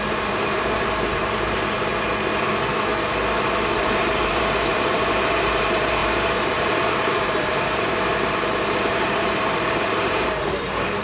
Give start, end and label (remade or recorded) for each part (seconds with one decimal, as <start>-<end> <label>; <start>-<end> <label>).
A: 0.0-1.9 remade; 1.9-3.7 recorded; 3.7-11.0 remade

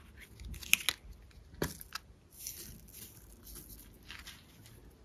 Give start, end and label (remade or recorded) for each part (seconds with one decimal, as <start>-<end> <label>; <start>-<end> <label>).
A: 0.0-1.6 recorded; 1.6-2.7 remade; 2.7-5.0 recorded